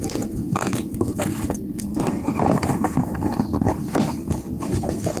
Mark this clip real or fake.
fake